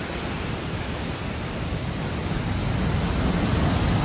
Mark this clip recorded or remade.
recorded